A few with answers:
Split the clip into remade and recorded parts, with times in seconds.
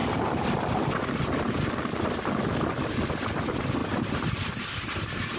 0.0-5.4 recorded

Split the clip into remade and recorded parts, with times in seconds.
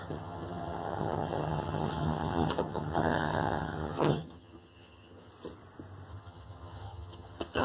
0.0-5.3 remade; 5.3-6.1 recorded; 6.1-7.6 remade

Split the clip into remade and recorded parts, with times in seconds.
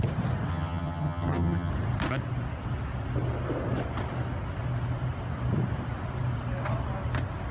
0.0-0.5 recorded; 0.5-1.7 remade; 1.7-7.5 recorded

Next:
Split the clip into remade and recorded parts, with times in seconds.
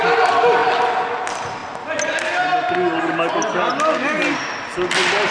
0.0-5.3 recorded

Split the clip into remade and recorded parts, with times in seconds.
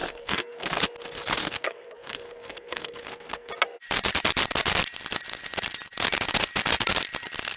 0.0-0.8 remade; 0.8-1.4 recorded; 1.4-3.5 remade; 3.5-7.6 recorded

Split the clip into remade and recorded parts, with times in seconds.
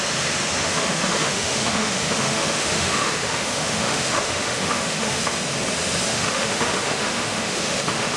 0.0-0.6 recorded; 0.6-5.2 remade; 5.2-6.1 recorded; 6.1-8.2 remade